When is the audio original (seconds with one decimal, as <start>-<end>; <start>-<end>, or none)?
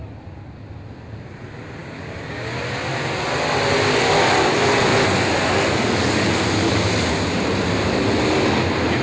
0.0-1.8; 2.5-9.0